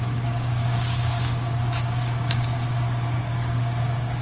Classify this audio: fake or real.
fake